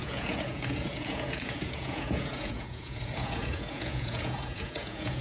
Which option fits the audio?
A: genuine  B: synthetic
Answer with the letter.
B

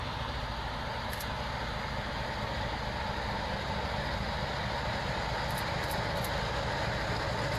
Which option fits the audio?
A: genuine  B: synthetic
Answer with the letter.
A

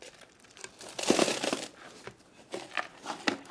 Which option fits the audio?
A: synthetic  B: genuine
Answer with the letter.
B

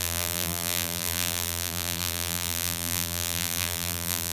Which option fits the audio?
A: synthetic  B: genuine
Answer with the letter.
A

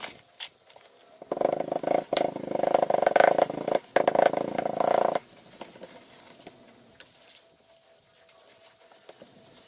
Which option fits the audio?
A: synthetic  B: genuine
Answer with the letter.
B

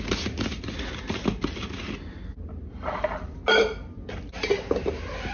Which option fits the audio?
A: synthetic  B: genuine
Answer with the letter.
B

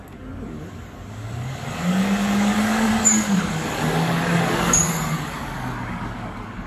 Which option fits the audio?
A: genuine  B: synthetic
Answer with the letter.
B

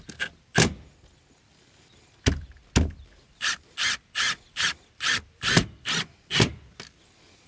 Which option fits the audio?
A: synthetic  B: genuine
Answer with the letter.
B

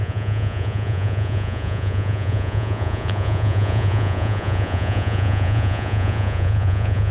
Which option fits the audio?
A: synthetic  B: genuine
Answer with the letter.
A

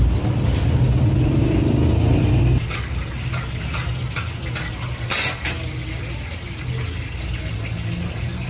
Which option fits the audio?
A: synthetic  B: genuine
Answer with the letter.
B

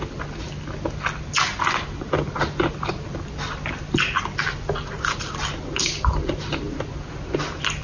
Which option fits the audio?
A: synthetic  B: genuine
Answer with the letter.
B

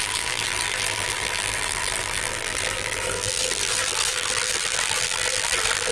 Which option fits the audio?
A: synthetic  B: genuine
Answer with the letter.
A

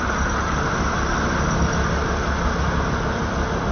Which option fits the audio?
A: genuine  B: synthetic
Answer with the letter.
A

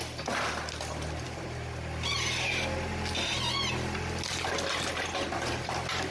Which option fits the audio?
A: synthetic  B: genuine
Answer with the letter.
B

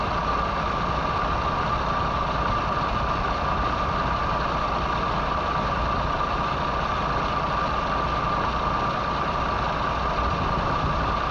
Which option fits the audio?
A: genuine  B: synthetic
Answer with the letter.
A